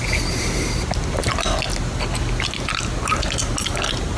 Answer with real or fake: real